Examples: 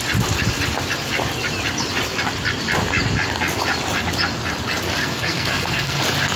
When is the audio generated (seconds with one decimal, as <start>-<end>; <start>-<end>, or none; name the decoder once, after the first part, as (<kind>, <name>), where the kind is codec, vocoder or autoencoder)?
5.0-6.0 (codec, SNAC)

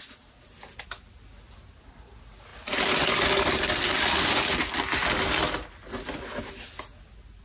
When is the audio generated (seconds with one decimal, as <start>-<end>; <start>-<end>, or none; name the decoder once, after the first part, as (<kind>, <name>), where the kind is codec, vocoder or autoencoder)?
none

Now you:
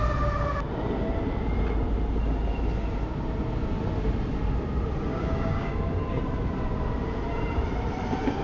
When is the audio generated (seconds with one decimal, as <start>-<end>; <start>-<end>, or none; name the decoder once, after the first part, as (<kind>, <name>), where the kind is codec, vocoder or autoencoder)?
5.1-5.9 (codec, DAC)

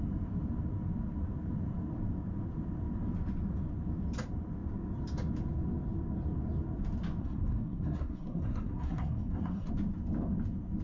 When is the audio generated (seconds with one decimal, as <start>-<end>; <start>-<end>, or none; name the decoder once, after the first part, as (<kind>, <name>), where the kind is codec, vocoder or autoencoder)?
7.2-9.7 (codec, SNAC)